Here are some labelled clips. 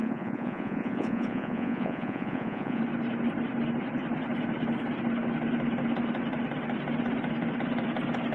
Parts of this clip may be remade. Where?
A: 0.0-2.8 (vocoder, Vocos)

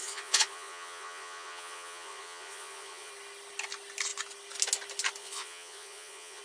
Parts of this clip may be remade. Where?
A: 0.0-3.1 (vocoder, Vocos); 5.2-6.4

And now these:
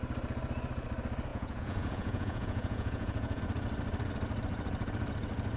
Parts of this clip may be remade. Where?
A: 1.3-3.4 (vocoder, Vocos)

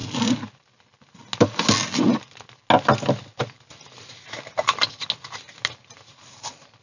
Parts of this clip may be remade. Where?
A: none